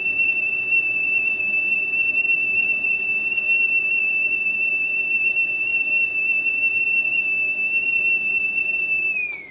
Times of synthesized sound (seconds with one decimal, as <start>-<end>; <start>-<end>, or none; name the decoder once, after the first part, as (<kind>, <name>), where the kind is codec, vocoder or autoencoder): none